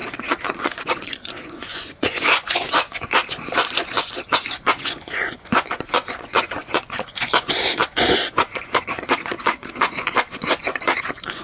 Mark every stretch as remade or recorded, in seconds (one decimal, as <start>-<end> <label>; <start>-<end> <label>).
0.0-11.4 remade